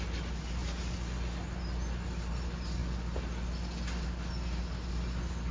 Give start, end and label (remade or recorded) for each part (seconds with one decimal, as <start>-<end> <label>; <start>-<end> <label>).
0.0-5.5 recorded